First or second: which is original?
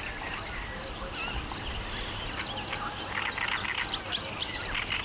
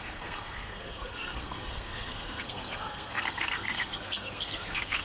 first